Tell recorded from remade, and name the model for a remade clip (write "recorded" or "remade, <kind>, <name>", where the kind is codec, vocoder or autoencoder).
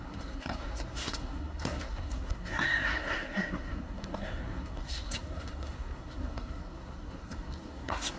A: remade, codec, SNAC